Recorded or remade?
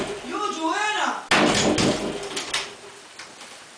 recorded